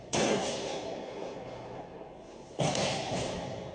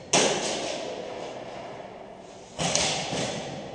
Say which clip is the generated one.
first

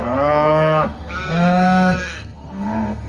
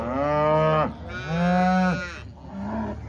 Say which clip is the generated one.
first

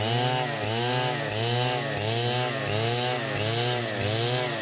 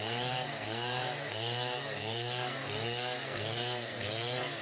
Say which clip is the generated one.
second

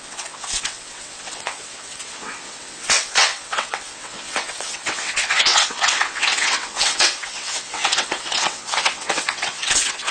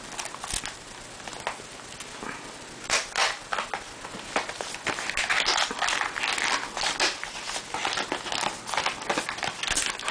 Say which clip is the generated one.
first